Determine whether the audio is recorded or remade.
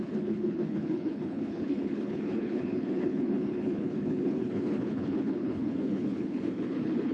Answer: remade